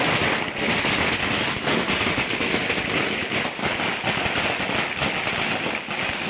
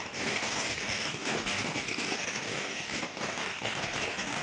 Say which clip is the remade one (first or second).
second